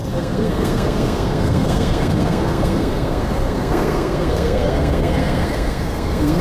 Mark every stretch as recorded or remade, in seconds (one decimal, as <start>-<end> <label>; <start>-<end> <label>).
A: 0.0-6.4 remade